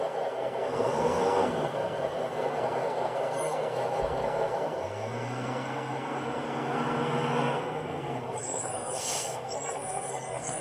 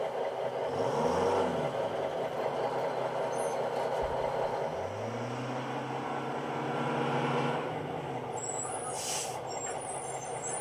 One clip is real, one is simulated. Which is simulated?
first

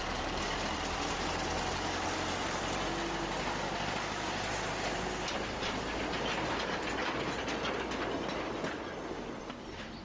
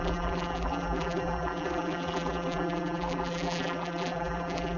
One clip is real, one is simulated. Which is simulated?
second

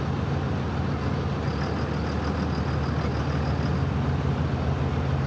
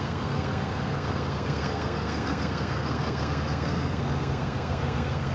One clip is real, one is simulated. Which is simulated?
second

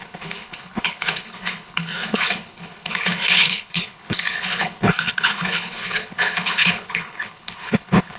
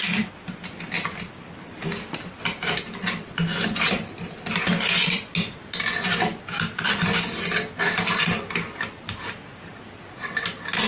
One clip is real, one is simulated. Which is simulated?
first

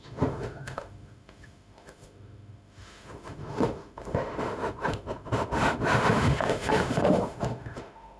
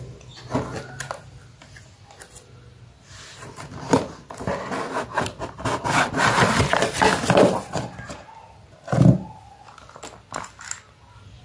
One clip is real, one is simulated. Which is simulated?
first